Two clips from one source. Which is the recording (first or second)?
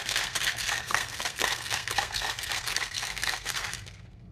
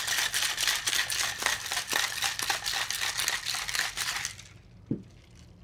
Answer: second